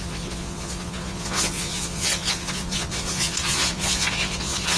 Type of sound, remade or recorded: remade